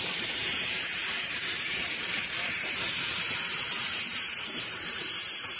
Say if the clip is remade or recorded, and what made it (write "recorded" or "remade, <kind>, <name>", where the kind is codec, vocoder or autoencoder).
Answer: remade, vocoder, BigVGAN v2